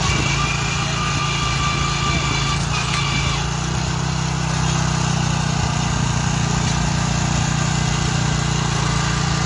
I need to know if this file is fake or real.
real